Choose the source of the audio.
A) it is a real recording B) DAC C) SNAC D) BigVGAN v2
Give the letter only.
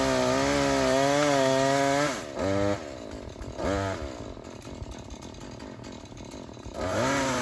A